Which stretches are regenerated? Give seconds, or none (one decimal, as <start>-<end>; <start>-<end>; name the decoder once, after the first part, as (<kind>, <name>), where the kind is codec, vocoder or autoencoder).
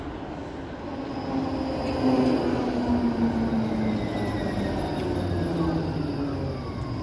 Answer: none